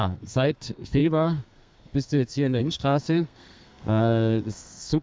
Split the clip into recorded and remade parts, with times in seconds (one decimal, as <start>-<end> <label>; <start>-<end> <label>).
0.0-5.0 remade

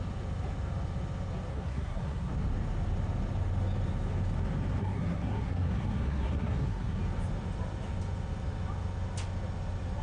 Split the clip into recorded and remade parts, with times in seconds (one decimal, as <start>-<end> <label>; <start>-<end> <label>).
0.0-1.5 recorded; 1.5-2.3 remade; 2.3-4.8 recorded; 4.8-7.0 remade; 7.0-10.0 recorded